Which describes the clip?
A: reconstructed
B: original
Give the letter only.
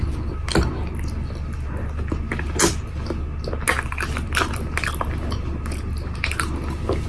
B